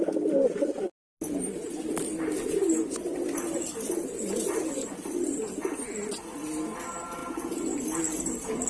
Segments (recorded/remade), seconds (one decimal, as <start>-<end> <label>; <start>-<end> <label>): 0.0-8.7 recorded